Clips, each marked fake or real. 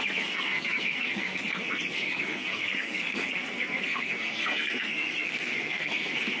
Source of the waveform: fake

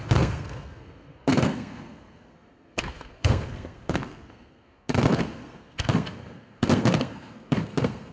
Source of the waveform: fake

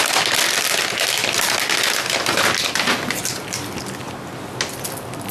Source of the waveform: real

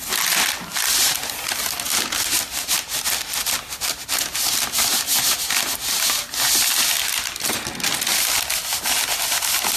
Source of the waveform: real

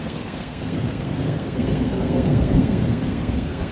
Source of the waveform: fake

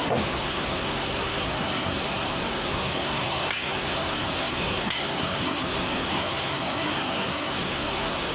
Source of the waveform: fake